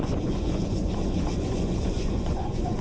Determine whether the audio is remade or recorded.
remade